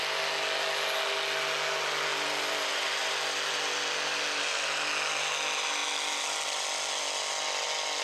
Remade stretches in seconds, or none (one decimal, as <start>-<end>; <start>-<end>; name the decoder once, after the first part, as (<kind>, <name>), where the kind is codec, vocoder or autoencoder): 2.1-4.9 (vocoder, BigVGAN v2)